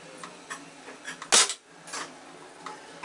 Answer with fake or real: real